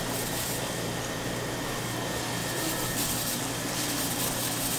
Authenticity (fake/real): real